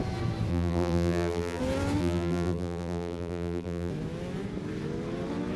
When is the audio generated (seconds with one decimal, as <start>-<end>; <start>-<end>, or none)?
0.5-1.6; 2.0-3.9